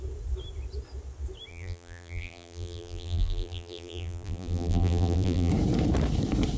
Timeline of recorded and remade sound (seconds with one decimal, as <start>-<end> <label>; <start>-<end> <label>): 0.0-1.5 recorded; 1.5-5.5 remade; 5.5-6.6 recorded